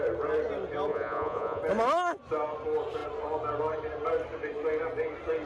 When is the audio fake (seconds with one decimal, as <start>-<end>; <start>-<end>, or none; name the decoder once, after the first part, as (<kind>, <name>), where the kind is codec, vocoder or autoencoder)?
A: 0.9-1.6 (vocoder, Vocos)